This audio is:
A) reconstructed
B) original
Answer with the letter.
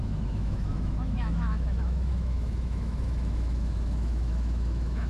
A